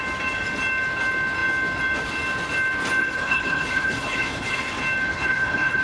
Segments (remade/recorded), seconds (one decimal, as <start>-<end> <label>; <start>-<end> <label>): 0.0-3.0 recorded; 3.0-4.6 remade; 4.6-5.1 recorded; 5.1-5.8 remade

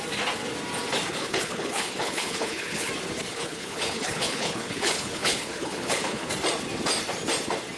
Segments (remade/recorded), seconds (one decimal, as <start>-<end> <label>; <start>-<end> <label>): 0.0-1.1 recorded; 1.1-2.9 remade; 2.9-3.3 recorded; 3.3-6.3 remade; 6.3-7.8 recorded